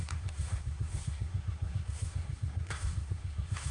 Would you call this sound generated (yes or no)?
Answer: yes